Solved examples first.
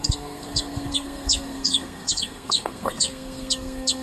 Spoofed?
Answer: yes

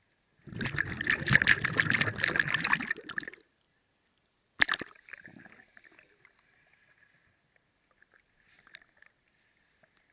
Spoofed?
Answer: no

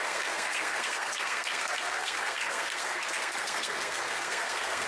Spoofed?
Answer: yes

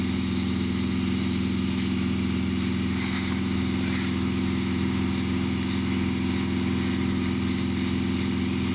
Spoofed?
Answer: no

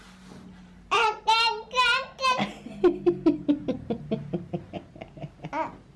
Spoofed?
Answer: no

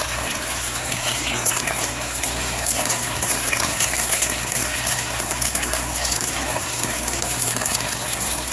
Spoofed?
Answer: yes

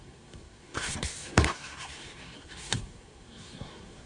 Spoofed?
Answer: yes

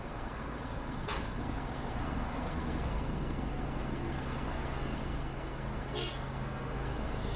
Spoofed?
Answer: yes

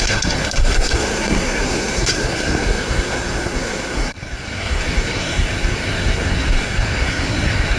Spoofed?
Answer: yes